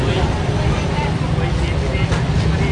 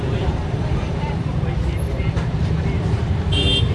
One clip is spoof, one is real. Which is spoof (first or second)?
second